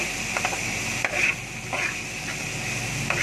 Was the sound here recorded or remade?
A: recorded